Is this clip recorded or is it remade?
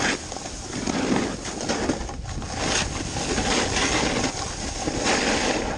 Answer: recorded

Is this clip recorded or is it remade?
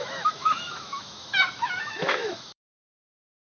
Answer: remade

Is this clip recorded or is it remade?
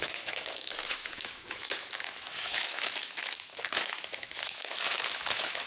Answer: remade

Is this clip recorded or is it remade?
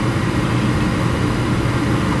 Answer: recorded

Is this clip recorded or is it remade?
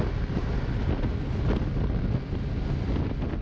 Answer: recorded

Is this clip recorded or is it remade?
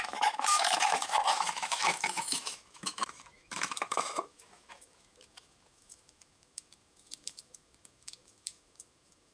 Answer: remade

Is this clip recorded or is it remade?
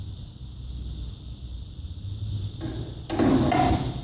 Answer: recorded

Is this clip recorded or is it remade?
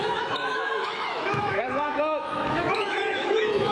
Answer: remade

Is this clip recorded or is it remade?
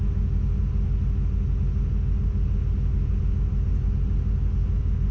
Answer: recorded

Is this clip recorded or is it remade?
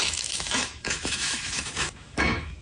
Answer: remade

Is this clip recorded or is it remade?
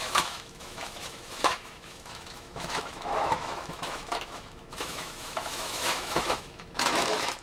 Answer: remade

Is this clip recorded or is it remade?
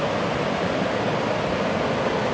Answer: recorded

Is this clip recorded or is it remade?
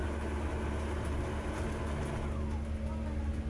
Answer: recorded